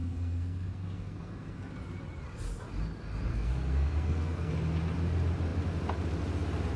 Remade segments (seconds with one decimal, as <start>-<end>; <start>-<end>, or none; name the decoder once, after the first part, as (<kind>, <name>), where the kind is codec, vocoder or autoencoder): 0.0-1.7 (codec, SNAC); 3.3-4.5